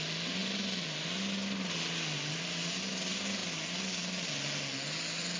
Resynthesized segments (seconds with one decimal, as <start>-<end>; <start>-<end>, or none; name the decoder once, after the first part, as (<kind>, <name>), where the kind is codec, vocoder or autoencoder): none